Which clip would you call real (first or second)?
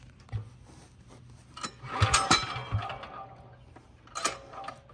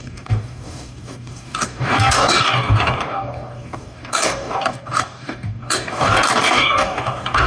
first